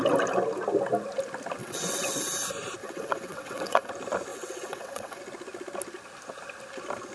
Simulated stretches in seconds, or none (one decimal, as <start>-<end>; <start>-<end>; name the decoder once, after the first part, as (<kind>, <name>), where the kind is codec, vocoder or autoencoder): 1.6-2.2 (vocoder, WaveNeXt); 2.8-3.9; 4.3-5.2